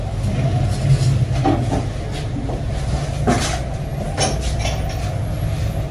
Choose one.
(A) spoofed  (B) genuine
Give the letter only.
B